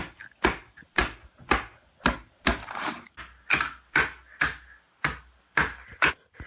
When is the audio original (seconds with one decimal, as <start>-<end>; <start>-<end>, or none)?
0.0-6.5